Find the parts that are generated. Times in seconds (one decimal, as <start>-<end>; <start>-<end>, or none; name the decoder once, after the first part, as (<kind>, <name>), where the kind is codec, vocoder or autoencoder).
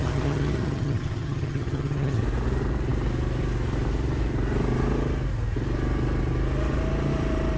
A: 0.0-2.2 (vocoder, HiFi-GAN)